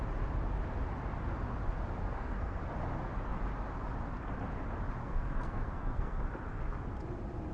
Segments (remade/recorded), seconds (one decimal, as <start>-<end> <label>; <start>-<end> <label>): 0.0-2.0 recorded; 2.0-2.6 remade; 2.6-5.0 recorded; 5.0-6.2 remade; 6.2-7.5 recorded